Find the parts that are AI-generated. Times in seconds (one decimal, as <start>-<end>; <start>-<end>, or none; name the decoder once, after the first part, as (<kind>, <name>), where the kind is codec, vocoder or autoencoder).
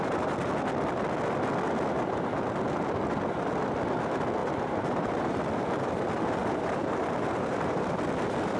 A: 4.4-5.3 (vocoder, BigVGAN v2); 6.4-7.7